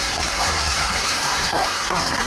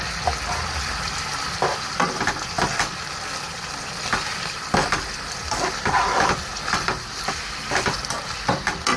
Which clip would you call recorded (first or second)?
second